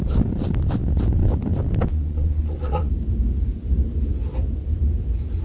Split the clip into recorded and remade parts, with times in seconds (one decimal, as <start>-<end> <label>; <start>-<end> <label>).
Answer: 0.0-1.9 recorded; 1.9-2.9 remade; 2.9-5.4 recorded